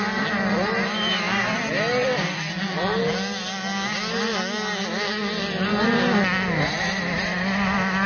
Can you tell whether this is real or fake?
real